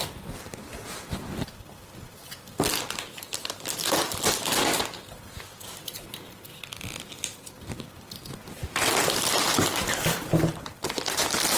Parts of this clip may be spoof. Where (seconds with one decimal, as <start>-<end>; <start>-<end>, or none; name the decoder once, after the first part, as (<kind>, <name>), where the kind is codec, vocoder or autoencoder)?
none